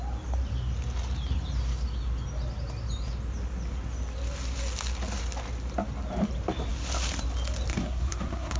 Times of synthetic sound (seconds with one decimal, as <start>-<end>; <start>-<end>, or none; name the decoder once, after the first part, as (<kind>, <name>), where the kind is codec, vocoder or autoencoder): 7.7-8.6 (codec, SNAC)